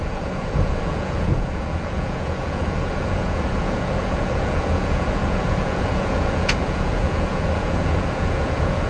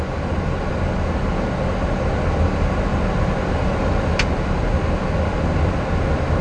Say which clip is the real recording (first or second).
second